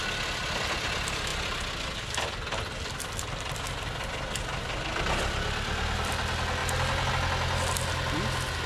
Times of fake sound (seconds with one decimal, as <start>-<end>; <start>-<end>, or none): none